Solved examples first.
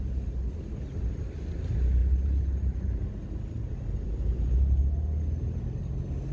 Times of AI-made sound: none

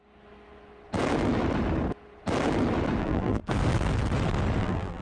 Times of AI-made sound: 3.0-3.4 (vocoder, BigVGAN v2); 4.6-5.0

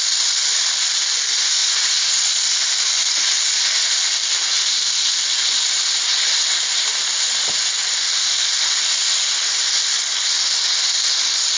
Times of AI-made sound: none

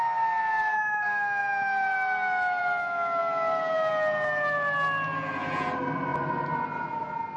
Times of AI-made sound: none

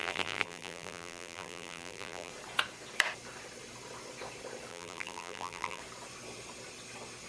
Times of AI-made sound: 0.0-2.3 (vocoder, BigVGAN v2); 4.7-5.8

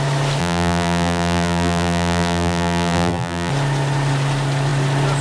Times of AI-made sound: 0.4-3.5 (vocoder, BigVGAN v2)

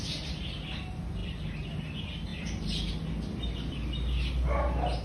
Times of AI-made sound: 2.3-2.9 (vocoder, BigVGAN v2)

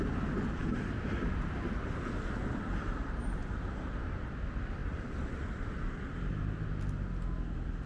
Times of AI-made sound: 4.8-6.0 (vocoder, BigVGAN v2)